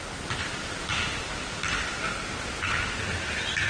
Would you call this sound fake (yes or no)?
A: no